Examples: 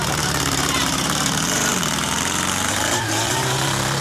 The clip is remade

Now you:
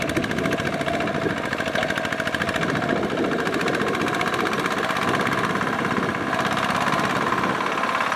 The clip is recorded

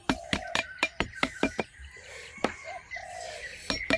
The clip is remade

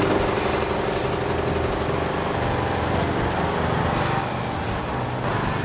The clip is recorded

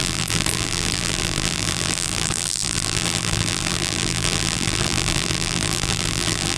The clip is remade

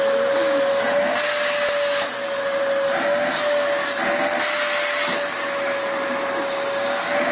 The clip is recorded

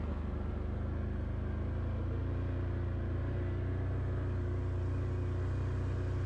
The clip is recorded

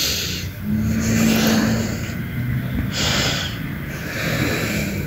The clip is recorded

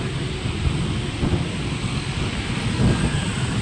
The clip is recorded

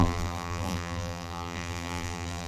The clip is remade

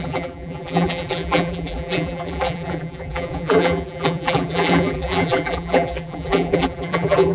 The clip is remade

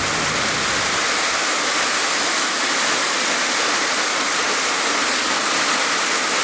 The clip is recorded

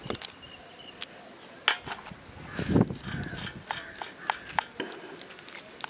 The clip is recorded